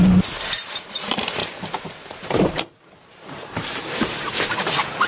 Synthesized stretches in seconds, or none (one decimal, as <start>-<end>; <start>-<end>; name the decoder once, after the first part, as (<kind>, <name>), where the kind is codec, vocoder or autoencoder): 1.4-4.5 (vocoder, BigVGAN v2)